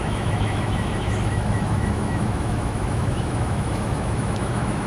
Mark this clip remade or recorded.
remade